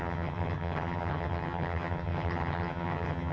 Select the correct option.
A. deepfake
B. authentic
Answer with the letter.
A